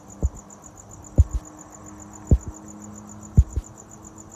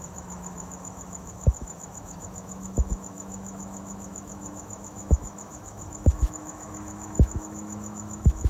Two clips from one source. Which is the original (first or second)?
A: first